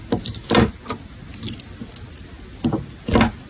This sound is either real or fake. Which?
real